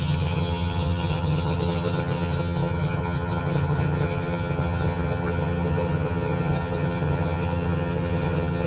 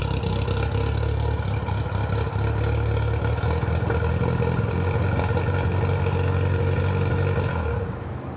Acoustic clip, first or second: second